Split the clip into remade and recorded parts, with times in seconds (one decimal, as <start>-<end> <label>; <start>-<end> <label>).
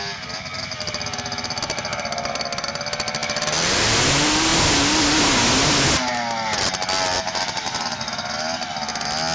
0.0-3.2 recorded; 3.2-4.0 remade; 4.0-7.2 recorded; 7.2-8.1 remade; 8.1-9.3 recorded